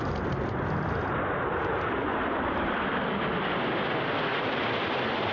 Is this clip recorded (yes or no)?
yes